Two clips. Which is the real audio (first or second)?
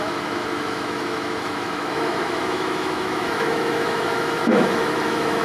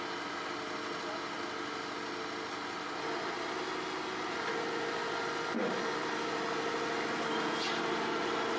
second